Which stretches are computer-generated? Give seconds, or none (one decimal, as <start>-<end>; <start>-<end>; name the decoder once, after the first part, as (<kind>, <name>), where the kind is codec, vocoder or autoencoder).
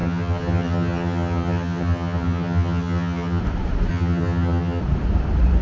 0.0-3.4 (vocoder, HiFi-GAN); 3.9-4.8